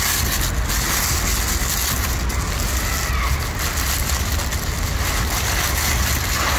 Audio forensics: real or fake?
real